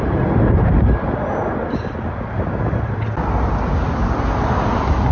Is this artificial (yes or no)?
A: no